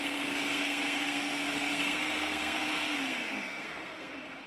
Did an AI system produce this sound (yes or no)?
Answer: yes